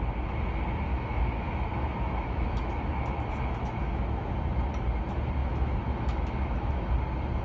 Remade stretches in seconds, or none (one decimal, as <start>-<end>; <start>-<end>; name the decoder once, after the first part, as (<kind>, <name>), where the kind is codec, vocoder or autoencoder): 0.9-4.3 (autoencoder, DAC-VAE); 5.4-6.9